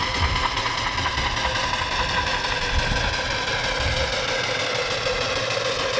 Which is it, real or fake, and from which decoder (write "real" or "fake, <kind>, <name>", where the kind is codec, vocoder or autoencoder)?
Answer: real